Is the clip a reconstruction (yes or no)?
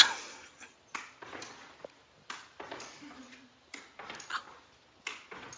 no